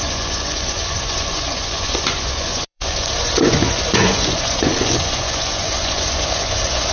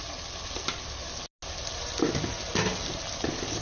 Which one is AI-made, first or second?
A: first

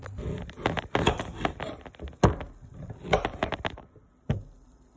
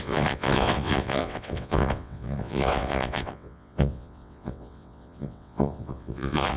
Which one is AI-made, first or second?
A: second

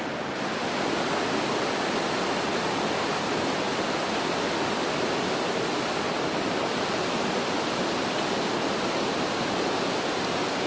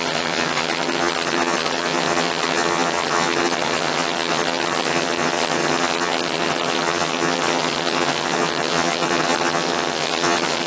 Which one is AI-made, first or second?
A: second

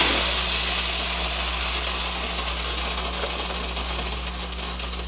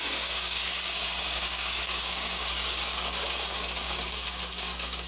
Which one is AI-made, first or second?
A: second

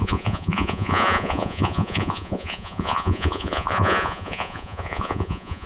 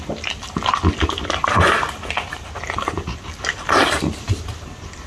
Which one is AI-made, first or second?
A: first